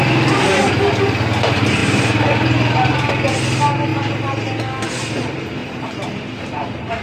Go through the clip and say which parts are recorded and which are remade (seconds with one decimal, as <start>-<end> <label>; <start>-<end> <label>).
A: 0.0-1.8 recorded; 1.8-3.1 remade; 3.1-5.6 recorded; 5.6-6.4 remade; 6.4-7.0 recorded